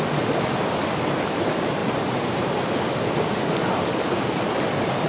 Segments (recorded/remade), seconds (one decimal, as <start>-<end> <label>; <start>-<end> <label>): 0.0-5.1 recorded